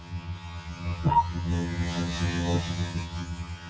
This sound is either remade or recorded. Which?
remade